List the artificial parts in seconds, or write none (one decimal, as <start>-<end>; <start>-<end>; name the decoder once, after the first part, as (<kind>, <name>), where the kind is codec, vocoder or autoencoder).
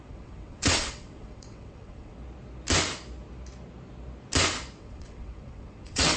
0.0-2.2 (vocoder, WaveNeXt); 4.8-6.2